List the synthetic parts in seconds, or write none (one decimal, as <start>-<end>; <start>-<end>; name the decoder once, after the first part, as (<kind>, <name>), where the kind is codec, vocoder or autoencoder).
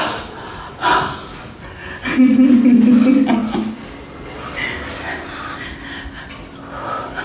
none